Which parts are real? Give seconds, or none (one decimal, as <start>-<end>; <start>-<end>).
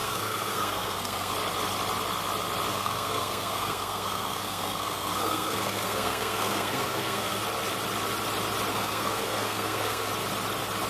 1.3-2.7; 7.4-8.7; 10.1-10.9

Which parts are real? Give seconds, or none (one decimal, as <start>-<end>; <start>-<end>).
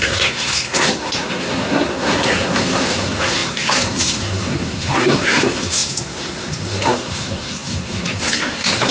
none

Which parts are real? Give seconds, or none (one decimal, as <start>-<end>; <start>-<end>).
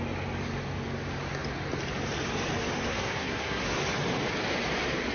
0.0-2.9; 3.8-5.1